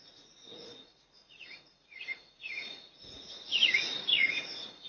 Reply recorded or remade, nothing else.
remade